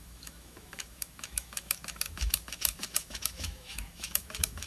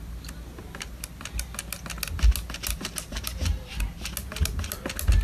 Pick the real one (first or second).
second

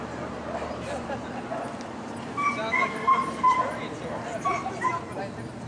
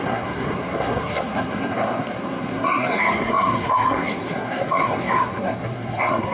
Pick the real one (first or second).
first